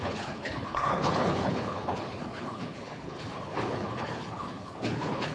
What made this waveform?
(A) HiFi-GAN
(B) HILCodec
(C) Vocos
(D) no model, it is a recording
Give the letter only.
B